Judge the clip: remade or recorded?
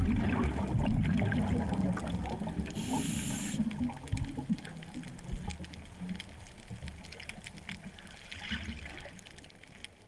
recorded